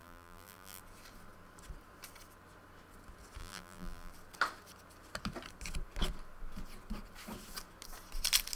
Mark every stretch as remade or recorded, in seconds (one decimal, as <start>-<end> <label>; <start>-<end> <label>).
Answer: 0.0-0.8 remade; 0.8-3.4 recorded; 3.4-4.1 remade; 4.1-8.6 recorded